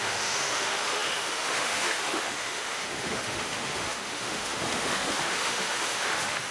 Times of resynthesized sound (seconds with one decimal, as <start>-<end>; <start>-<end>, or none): 0.0-6.5